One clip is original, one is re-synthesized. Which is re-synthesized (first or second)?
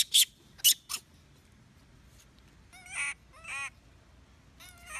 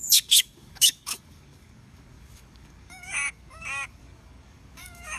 second